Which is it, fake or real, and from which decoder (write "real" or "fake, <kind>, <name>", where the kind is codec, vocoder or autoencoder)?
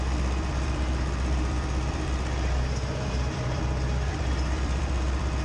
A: fake, vocoder, BigVGAN v2